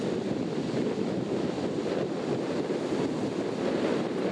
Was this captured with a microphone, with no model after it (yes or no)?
yes